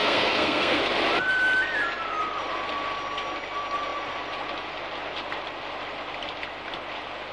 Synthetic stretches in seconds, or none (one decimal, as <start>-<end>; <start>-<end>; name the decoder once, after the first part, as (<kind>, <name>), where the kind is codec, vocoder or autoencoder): 0.0-0.8 (codec, SNAC)